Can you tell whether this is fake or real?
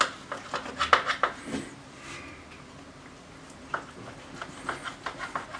real